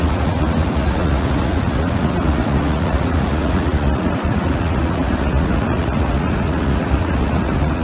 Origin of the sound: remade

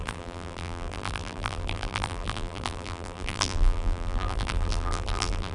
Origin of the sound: remade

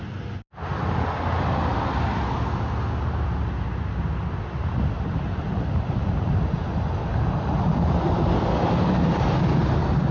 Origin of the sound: recorded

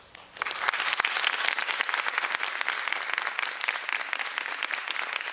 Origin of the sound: recorded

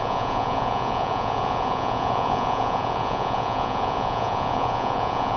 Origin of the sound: remade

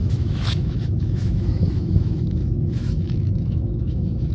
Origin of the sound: remade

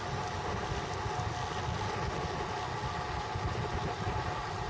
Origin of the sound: recorded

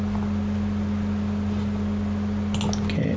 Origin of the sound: recorded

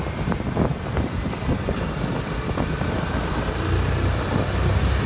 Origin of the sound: recorded